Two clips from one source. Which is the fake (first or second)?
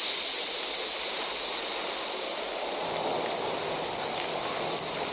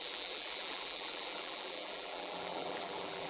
second